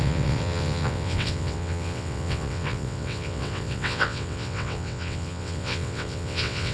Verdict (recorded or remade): remade